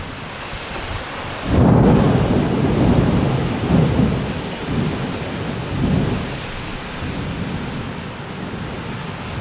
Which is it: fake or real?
fake